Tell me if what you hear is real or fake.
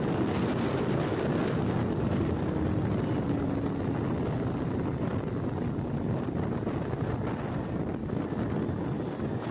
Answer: real